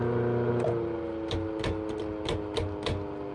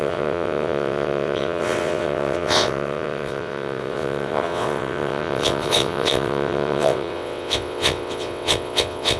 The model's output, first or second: second